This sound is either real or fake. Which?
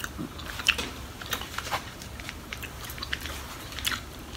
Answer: fake